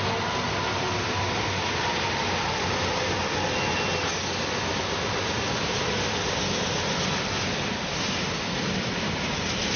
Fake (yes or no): no